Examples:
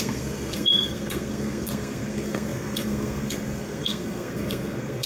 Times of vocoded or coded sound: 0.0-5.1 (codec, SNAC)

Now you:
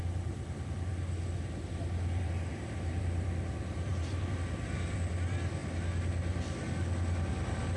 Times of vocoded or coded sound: 0.0-0.9 (vocoder, BigVGAN v2); 2.2-5.6; 7.3-7.8

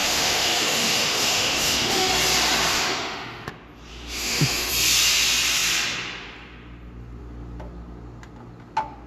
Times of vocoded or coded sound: 0.0-2.1 (autoencoder, DAC-VAE); 2.7-3.5; 3.9-4.7

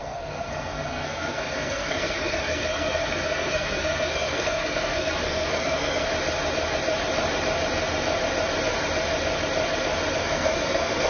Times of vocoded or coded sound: 0.0-6.1 (codec, SNAC); 10.2-11.1

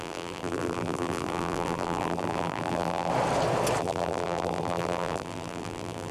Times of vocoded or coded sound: 0.0-3.1 (vocoder, BigVGAN v2); 3.8-6.1